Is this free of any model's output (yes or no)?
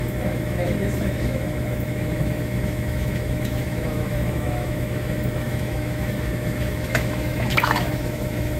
no